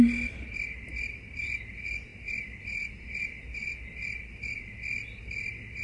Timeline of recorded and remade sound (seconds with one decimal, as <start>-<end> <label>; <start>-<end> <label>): 0.0-5.8 recorded